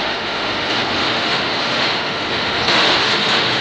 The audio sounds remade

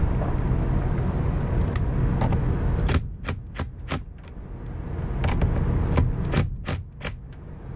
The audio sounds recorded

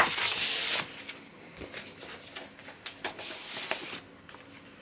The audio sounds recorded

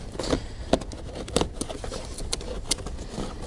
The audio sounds recorded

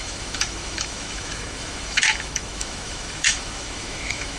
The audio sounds remade